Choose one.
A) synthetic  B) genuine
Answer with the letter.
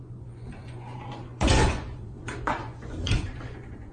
A